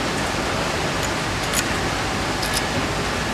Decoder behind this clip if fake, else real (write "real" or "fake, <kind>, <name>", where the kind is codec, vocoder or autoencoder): real